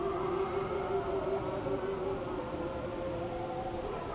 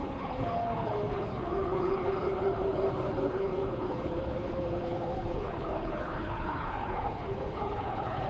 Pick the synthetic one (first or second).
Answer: second